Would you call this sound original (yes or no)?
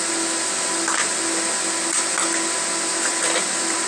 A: yes